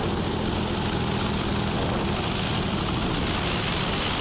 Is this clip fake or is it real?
real